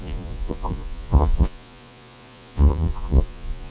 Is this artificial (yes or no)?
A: yes